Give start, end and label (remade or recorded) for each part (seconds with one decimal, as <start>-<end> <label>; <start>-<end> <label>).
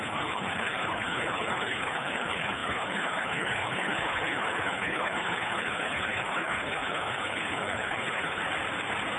0.0-8.4 remade; 8.4-9.2 recorded